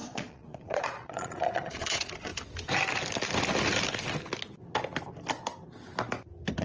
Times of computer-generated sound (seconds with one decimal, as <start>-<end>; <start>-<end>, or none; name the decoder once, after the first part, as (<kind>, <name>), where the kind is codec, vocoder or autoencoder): 0.0-2.3 (vocoder, Vocos)

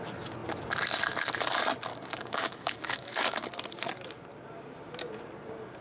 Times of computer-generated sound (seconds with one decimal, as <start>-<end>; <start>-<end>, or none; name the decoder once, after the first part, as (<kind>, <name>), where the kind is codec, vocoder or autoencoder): 1.9-3.5 (codec, DAC)

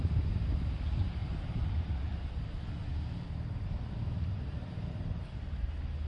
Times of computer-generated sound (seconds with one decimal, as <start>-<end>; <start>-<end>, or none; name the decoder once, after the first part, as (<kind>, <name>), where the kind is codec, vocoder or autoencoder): none

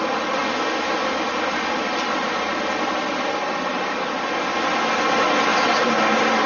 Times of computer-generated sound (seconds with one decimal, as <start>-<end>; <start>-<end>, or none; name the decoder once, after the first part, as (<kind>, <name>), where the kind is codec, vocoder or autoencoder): none

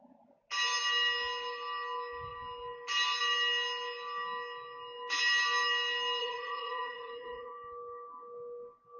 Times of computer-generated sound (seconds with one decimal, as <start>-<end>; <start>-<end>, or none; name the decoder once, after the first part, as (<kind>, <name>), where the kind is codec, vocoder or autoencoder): 6.2-7.5 (vocoder, Vocos)

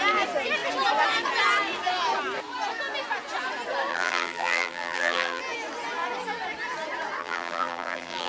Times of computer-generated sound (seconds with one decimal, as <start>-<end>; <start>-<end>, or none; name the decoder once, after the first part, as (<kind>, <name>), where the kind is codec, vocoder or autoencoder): 3.9-5.4 (vocoder, BigVGAN v2); 7.2-8.3

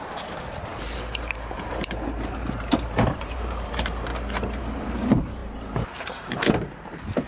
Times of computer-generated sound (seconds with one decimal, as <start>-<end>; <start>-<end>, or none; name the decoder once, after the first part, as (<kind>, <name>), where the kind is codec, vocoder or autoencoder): 0.0-4.1 (vocoder, BigVGAN v2); 4.6-7.3

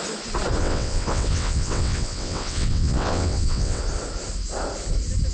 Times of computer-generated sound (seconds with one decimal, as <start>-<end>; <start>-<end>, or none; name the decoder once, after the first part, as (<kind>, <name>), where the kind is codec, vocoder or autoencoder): 0.6-3.8 (vocoder, WaveNeXt)